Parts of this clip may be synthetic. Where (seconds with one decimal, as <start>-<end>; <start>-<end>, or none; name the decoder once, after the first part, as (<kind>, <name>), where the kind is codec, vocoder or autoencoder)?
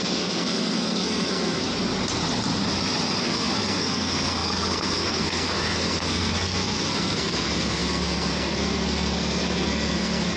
0.0-1.7 (codec, SNAC); 3.2-10.4